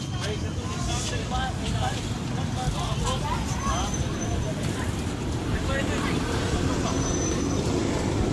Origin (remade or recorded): recorded